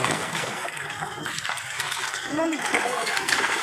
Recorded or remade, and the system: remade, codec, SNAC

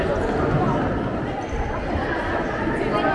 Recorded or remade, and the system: recorded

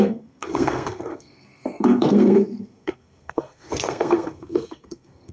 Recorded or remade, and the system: remade, codec, SNAC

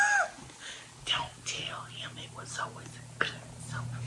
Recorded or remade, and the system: recorded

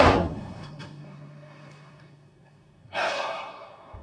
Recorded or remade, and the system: remade, codec, SNAC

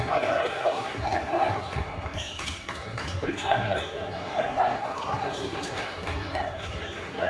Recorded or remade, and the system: remade, codec, SNAC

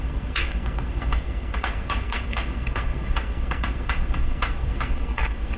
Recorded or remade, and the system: remade, codec, SNAC